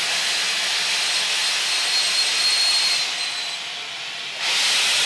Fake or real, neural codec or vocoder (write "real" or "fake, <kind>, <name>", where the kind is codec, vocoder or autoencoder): real